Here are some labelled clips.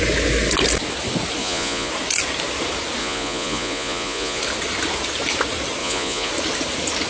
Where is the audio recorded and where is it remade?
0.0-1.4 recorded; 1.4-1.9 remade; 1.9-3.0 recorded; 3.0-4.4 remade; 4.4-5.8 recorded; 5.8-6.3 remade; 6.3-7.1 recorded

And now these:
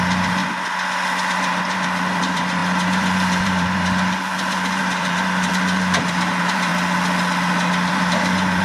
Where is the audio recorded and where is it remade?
0.0-0.4 remade; 0.4-1.3 recorded; 1.3-6.7 remade; 6.7-7.9 recorded; 7.9-8.6 remade

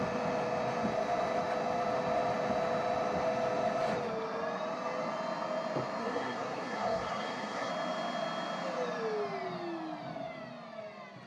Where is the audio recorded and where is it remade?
0.0-6.0 recorded; 6.0-7.7 remade; 7.7-11.3 recorded

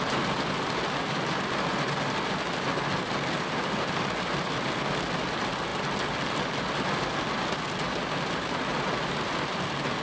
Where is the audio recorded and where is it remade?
0.0-10.0 recorded

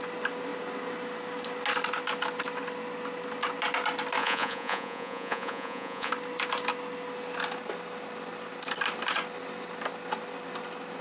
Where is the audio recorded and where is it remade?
0.0-4.2 recorded; 4.2-6.1 remade; 6.1-11.0 recorded

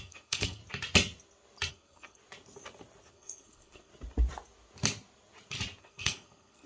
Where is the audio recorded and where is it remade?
0.0-0.6 remade; 0.6-1.7 recorded; 1.7-2.2 remade; 2.2-3.1 recorded; 3.1-3.9 remade; 3.9-5.8 recorded; 5.8-6.7 remade

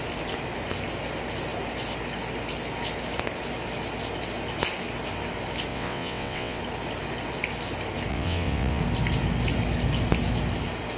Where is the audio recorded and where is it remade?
0.0-5.7 recorded; 5.7-6.6 remade; 6.6-8.1 recorded; 8.1-8.8 remade; 8.8-11.0 recorded